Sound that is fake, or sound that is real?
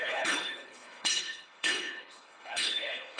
fake